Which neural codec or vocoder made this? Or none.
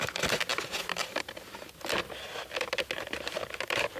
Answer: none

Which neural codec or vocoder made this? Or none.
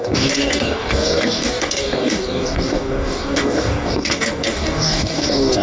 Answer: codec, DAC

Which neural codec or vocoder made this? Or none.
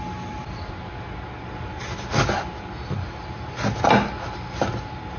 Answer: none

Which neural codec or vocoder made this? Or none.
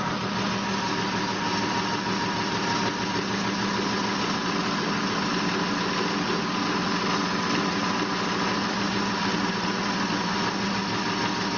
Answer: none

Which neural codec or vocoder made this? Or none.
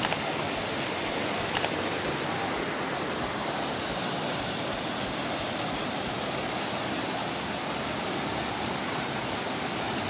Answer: none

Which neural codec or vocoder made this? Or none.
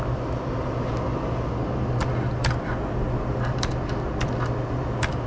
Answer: none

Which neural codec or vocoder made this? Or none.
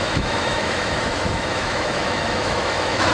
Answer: autoencoder, DAC-VAE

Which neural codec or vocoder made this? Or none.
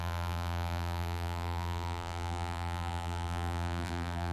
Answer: vocoder, BigVGAN v2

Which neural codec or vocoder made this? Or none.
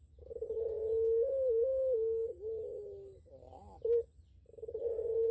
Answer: none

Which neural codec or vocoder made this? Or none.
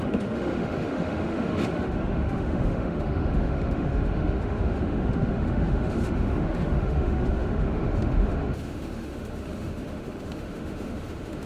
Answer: autoencoder, DAC-VAE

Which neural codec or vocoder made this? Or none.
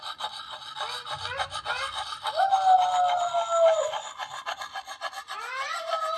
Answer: none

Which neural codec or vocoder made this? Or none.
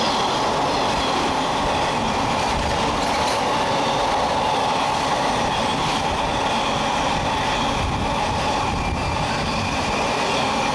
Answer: none